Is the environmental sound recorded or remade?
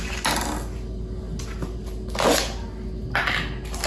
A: recorded